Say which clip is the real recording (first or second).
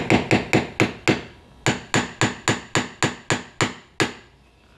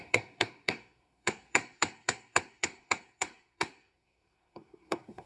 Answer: first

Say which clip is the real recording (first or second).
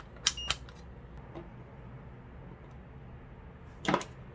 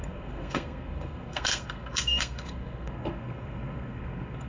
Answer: first